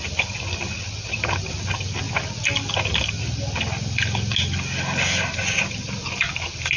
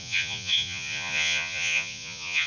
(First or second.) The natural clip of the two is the first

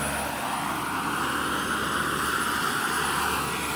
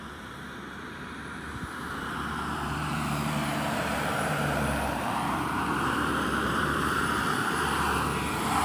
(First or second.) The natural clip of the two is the first